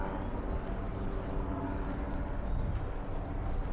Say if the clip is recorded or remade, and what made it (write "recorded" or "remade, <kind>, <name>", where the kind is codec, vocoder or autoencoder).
recorded